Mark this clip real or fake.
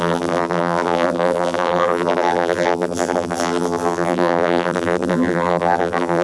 fake